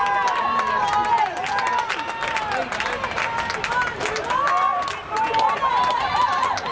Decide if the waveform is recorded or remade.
recorded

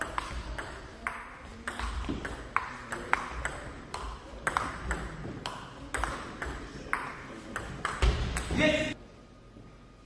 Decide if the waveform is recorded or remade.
recorded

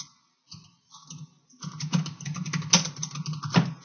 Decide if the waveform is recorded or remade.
recorded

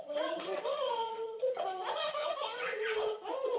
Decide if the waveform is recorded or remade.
remade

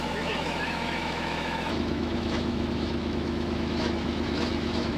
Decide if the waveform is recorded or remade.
remade